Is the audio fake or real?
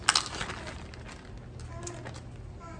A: real